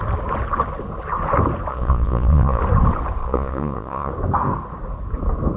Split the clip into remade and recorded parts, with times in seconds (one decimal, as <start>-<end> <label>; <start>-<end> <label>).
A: 0.0-1.7 recorded; 1.7-2.6 remade; 2.6-3.2 recorded; 3.2-4.1 remade; 4.1-5.6 recorded

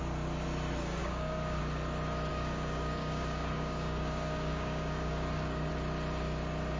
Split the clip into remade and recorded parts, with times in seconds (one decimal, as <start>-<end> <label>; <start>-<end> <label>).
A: 0.0-1.0 recorded; 1.0-1.6 remade; 1.6-2.3 recorded; 2.3-5.7 remade; 5.7-6.8 recorded